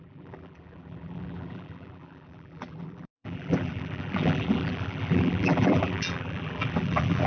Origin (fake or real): fake